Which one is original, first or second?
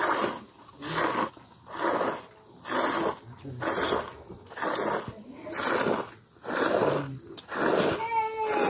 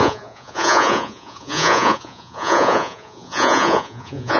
first